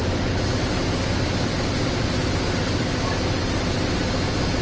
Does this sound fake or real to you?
real